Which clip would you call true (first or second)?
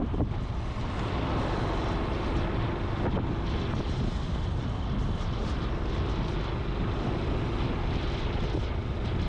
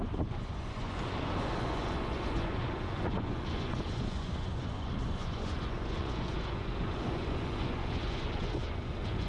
first